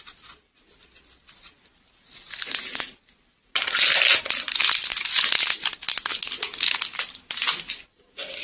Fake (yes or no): no